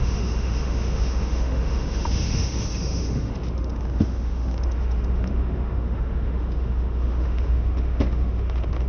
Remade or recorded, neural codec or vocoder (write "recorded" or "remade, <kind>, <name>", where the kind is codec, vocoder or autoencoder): remade, autoencoder, DAC-VAE